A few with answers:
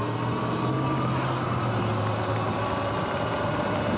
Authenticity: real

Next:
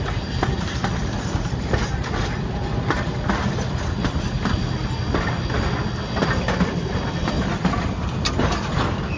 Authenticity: real